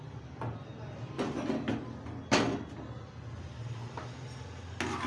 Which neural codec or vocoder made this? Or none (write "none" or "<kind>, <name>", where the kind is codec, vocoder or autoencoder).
none